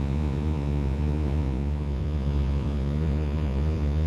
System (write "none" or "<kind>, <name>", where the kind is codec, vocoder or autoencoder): vocoder, Vocos